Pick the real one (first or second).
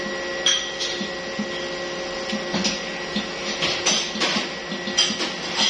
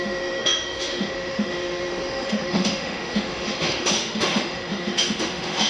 first